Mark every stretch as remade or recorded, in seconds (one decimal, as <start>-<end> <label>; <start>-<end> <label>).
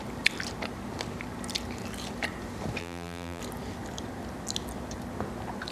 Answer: 0.0-2.8 recorded; 2.8-3.4 remade; 3.4-5.7 recorded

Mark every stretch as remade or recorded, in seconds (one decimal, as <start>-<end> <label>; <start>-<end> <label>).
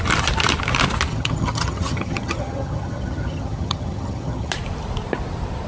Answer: 0.0-1.1 recorded; 1.1-4.5 remade; 4.5-5.7 recorded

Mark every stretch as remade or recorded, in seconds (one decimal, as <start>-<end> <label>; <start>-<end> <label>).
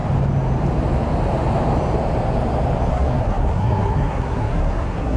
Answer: 0.0-2.9 recorded; 2.9-5.2 remade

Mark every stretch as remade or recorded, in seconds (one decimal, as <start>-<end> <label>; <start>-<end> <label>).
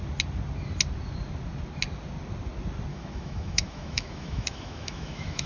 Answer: 0.0-2.9 recorded; 2.9-5.5 remade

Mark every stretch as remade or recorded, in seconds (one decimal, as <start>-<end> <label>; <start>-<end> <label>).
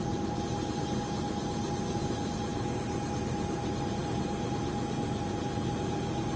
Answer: 0.0-6.4 recorded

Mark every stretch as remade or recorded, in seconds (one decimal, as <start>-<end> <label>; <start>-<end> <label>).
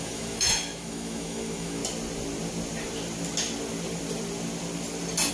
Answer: 0.0-1.8 remade; 1.8-5.3 recorded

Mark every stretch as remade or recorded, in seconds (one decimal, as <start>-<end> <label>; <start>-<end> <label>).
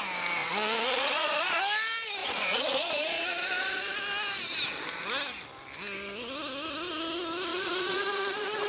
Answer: 0.0-0.4 recorded; 0.4-1.6 remade; 1.6-2.2 recorded; 2.2-4.0 remade; 4.0-7.5 recorded; 7.5-8.7 remade